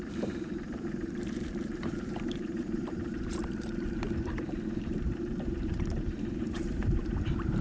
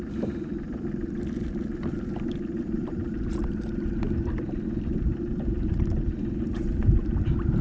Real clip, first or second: second